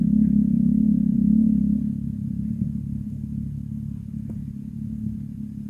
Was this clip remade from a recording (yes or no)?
no